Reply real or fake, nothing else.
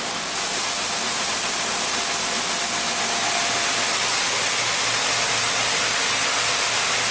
real